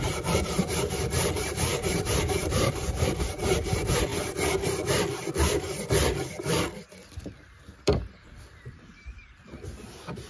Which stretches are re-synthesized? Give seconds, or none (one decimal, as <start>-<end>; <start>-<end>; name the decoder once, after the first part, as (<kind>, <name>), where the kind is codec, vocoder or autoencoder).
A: 0.0-4.1 (vocoder, BigVGAN v2); 7.2-8.0